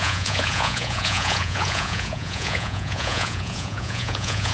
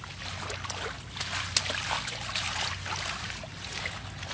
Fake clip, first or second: first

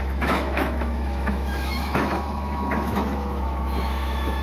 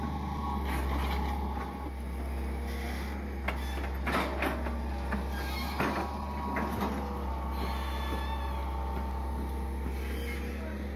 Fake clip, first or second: first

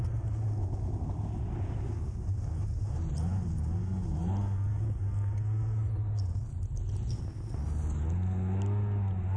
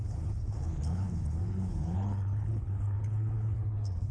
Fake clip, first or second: second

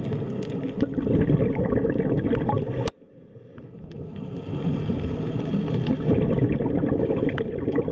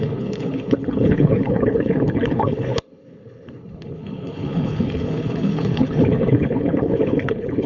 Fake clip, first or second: second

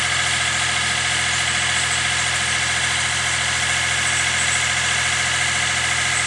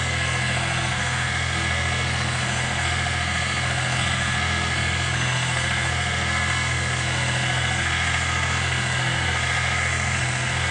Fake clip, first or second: second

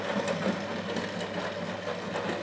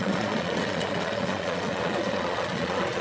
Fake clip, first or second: second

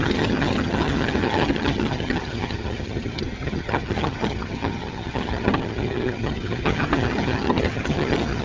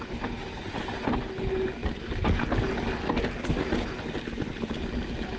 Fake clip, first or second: first